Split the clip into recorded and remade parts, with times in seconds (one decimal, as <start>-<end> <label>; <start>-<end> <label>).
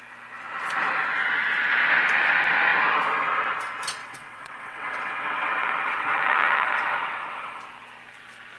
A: 0.0-4.0 recorded; 4.0-7.6 remade; 7.6-8.6 recorded